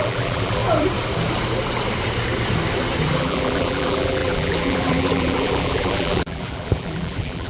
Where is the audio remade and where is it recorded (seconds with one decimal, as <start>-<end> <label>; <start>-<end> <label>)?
0.0-0.6 remade; 0.6-3.2 recorded; 3.2-7.5 remade

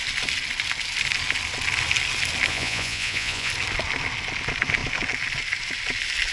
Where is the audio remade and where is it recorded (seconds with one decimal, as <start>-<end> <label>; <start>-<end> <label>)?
0.0-2.5 recorded; 2.5-3.5 remade; 3.5-6.3 recorded

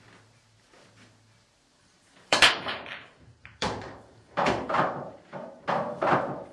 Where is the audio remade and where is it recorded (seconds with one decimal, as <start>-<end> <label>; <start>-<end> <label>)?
0.0-1.7 recorded; 1.7-5.6 remade; 5.6-6.5 recorded

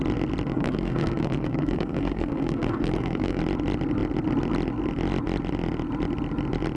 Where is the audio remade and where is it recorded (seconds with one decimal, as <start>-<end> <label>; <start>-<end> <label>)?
0.0-0.5 recorded; 0.5-3.4 remade; 3.4-6.8 recorded

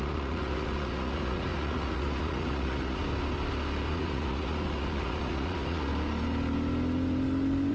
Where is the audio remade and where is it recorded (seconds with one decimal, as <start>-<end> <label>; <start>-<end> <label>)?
0.0-3.0 remade; 3.0-3.9 recorded; 3.9-5.9 remade; 5.9-7.7 recorded